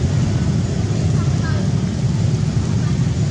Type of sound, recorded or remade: recorded